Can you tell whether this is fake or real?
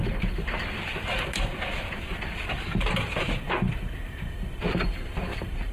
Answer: real